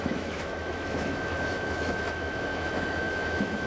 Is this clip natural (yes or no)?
no